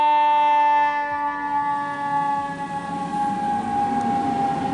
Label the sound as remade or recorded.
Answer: recorded